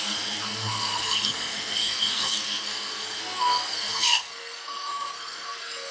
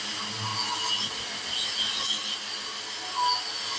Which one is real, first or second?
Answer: second